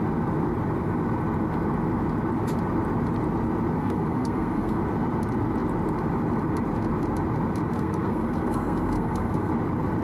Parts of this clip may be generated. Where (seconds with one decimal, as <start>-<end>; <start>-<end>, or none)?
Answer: 3.8-4.8; 7.7-9.5